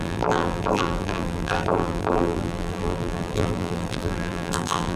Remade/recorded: remade